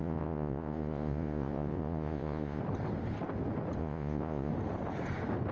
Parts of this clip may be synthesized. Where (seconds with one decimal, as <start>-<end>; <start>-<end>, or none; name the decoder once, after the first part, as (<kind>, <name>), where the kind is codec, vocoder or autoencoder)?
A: 0.0-2.6 (vocoder, Vocos); 3.8-4.5